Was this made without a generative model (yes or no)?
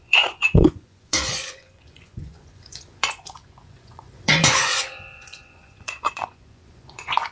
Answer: no